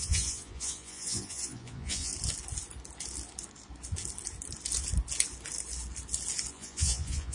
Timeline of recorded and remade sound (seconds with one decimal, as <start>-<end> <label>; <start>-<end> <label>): 0.0-2.1 remade; 2.1-6.5 recorded; 6.5-7.3 remade